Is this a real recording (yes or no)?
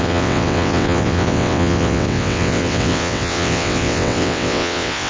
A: no